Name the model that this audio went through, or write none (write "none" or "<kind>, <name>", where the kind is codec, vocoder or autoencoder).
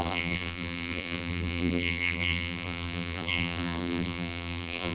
vocoder, BigVGAN v2